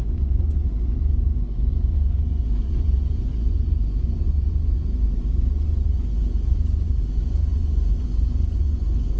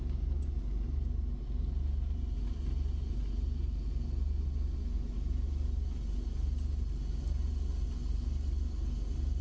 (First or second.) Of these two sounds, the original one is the second